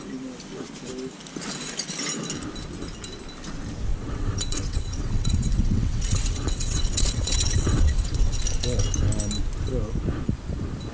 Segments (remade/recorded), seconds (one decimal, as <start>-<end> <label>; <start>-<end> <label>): 0.0-3.9 recorded; 3.9-8.4 remade; 8.4-10.9 recorded